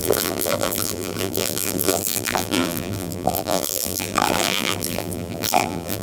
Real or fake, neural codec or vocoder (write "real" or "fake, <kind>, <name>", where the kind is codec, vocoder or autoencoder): fake, vocoder, BigVGAN v2